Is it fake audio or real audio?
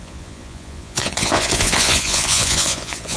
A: fake